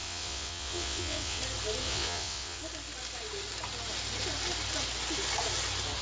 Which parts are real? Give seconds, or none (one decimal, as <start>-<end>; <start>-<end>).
1.4-1.8; 2.6-6.0